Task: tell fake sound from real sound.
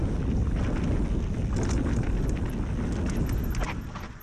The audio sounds real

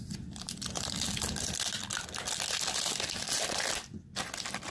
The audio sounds real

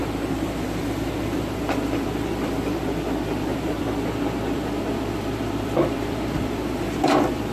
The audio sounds fake